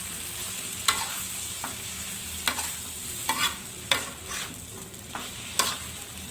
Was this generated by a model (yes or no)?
no